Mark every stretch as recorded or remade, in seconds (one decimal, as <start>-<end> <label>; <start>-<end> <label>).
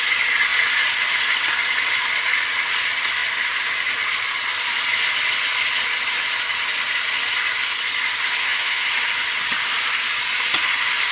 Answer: 0.0-8.4 recorded; 8.4-8.9 remade; 8.9-11.1 recorded